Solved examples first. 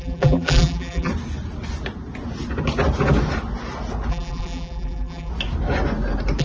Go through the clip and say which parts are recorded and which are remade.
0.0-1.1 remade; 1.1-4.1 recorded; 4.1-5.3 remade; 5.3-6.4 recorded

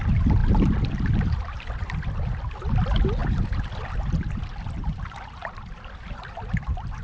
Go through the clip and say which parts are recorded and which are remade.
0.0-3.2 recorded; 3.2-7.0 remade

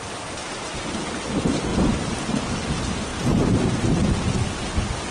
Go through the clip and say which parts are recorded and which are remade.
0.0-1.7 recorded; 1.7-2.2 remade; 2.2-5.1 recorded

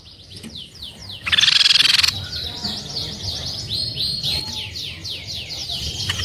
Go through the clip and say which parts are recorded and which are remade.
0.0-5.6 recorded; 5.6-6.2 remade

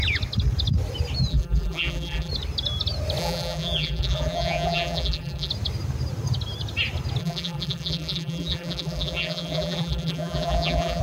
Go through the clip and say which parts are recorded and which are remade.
0.0-1.3 recorded; 1.3-2.3 remade; 2.3-3.2 recorded; 3.2-5.5 remade; 5.5-7.2 recorded; 7.2-11.0 remade